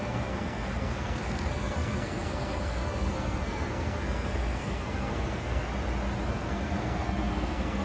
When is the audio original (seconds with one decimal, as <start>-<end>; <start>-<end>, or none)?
5.7-6.3